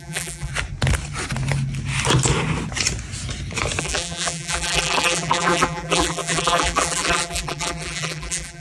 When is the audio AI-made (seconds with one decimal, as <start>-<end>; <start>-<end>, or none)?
0.0-0.5; 3.8-8.6